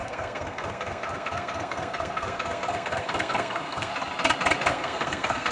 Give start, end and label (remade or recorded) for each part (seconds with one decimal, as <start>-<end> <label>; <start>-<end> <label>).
0.0-3.9 remade; 3.9-4.7 recorded; 4.7-5.5 remade